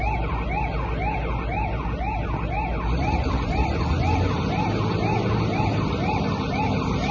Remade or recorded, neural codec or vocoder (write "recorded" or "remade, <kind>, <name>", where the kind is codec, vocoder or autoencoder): recorded